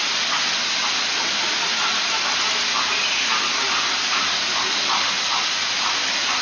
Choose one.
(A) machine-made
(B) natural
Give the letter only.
B